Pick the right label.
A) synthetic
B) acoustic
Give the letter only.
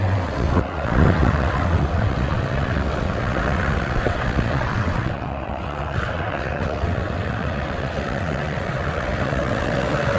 A